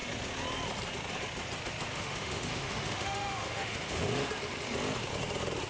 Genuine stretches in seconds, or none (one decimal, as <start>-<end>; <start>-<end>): 0.0-1.9; 4.3-5.7